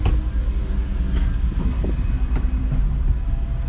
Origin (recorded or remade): recorded